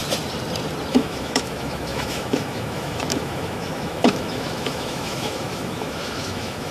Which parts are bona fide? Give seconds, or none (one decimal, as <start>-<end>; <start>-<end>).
0.0-0.9